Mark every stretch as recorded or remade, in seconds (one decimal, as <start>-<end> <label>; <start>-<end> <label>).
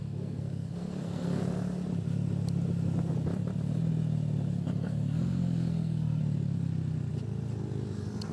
0.0-1.4 remade; 1.4-4.6 recorded; 4.6-6.2 remade; 6.2-8.3 recorded